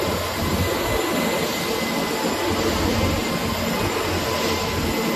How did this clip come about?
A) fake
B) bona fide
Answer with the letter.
B